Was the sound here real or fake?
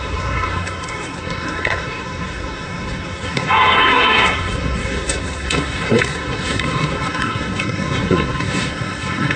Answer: fake